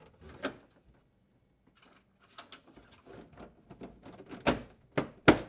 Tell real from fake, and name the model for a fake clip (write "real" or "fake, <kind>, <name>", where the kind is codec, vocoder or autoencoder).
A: real